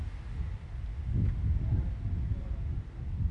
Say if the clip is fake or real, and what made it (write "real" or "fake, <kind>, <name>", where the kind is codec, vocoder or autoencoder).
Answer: real